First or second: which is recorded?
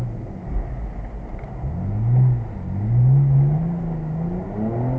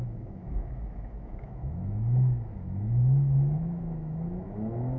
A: first